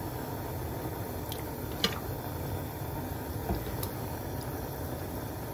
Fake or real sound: real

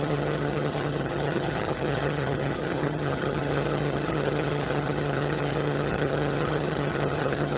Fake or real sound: fake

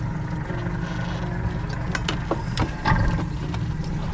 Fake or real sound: real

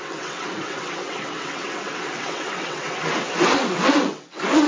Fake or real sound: fake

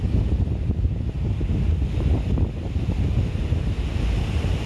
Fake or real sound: real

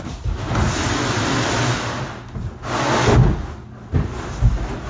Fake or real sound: real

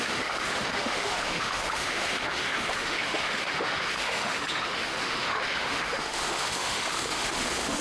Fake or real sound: fake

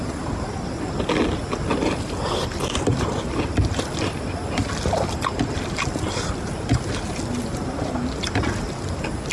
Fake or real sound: real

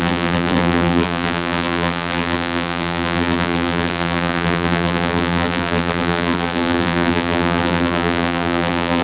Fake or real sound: fake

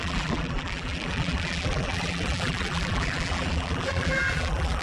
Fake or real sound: fake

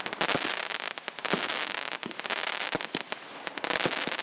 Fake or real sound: real